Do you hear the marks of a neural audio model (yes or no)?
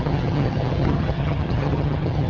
yes